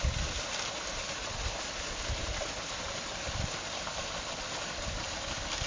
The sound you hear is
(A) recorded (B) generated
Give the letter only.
A